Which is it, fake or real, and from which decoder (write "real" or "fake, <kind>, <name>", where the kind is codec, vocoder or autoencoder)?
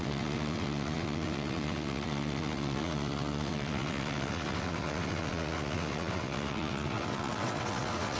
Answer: fake, vocoder, WaveNeXt